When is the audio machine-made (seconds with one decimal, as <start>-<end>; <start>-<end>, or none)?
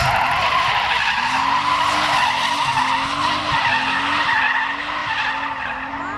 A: none